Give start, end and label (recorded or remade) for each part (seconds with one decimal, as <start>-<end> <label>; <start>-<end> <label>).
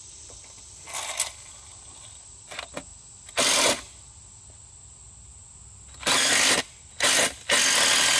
0.0-8.2 recorded